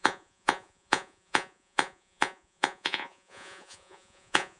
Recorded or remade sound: remade